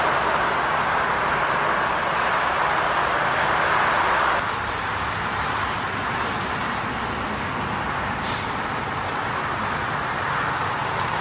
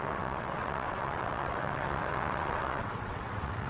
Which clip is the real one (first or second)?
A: first